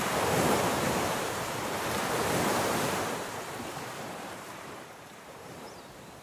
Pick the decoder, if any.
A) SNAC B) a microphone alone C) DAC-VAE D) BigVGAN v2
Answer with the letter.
D